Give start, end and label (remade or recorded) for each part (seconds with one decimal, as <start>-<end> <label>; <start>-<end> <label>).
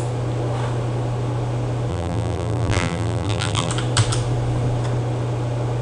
0.0-1.9 recorded; 1.9-3.7 remade; 3.7-5.8 recorded